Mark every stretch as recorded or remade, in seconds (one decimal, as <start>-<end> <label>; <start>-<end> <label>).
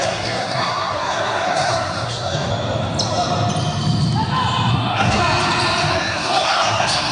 0.0-2.5 remade; 2.5-4.7 recorded; 4.7-5.2 remade; 5.2-5.9 recorded; 5.9-7.1 remade